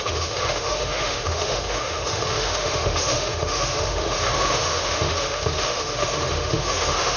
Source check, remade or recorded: remade